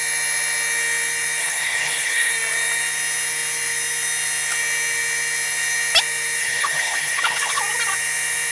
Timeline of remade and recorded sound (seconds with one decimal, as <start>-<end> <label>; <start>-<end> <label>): 0.0-1.4 recorded; 1.4-2.3 remade; 2.3-6.4 recorded; 6.4-7.6 remade; 7.6-8.5 recorded